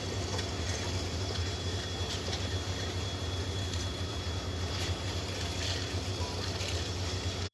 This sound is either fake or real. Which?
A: fake